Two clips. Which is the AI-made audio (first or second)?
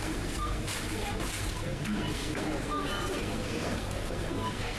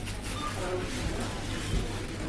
first